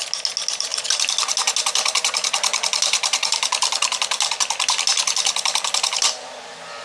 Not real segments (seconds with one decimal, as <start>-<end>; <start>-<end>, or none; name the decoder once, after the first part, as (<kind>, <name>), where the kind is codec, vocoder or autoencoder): none